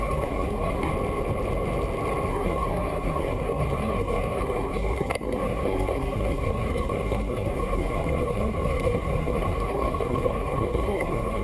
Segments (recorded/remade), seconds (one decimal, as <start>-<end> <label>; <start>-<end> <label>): 0.0-0.9 remade; 0.9-2.3 recorded; 2.3-11.4 remade